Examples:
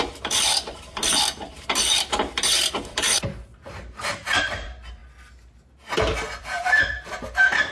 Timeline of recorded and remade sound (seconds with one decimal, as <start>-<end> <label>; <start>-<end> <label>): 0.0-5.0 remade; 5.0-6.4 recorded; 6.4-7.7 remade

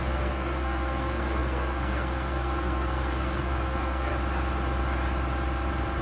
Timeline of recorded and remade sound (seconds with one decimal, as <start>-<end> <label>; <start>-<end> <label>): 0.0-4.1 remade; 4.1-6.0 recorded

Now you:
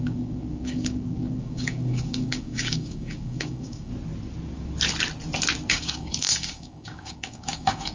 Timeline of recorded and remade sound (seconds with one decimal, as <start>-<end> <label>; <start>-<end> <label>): 0.0-3.9 remade; 3.9-5.7 recorded; 5.7-7.9 remade

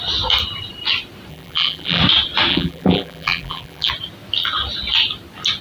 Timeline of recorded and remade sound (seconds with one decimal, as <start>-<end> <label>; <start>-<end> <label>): 0.0-1.3 recorded; 1.3-2.0 remade; 2.0-2.5 recorded; 2.5-3.9 remade; 3.9-5.6 recorded

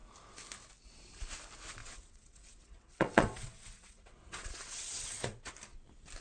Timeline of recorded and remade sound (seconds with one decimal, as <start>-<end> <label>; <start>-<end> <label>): 0.0-1.8 recorded; 1.8-5.5 remade; 5.5-6.2 recorded